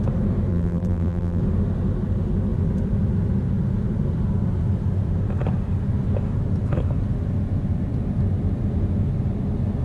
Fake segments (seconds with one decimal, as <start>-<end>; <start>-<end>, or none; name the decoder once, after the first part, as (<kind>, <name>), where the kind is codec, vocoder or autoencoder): 0.5-1.4 (vocoder, BigVGAN v2)